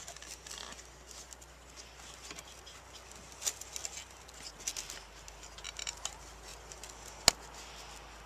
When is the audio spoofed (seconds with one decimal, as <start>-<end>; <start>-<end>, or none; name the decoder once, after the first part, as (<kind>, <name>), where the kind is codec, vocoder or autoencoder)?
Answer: none